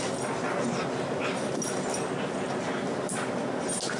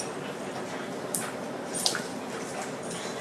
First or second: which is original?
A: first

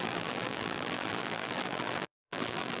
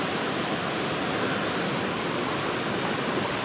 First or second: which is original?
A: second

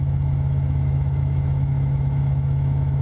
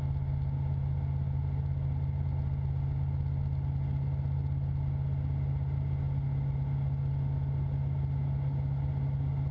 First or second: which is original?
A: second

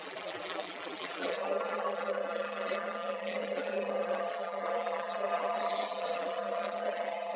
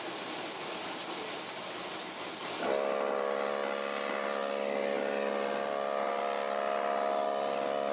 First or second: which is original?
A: second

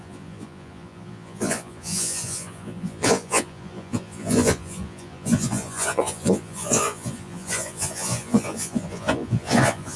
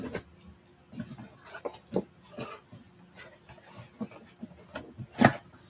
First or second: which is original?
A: second